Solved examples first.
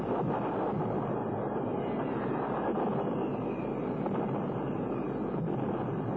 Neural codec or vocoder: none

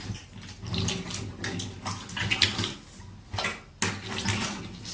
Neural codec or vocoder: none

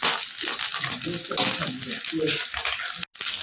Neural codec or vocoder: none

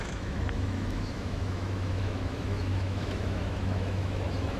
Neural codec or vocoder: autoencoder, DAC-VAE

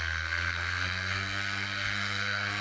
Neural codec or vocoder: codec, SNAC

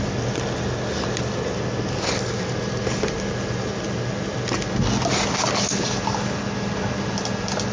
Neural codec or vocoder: none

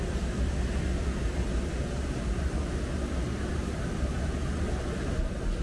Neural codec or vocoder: none